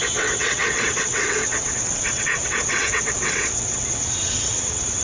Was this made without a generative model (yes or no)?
no